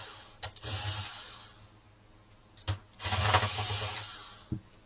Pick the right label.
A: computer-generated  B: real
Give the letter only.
B